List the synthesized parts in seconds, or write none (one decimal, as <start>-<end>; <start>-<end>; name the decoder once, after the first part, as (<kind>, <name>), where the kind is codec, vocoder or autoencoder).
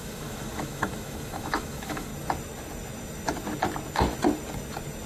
0.0-2.1 (autoencoder, DAC-VAE)